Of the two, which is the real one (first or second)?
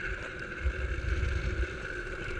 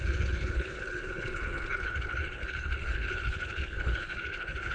first